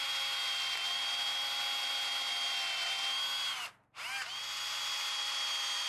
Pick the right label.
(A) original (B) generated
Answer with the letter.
A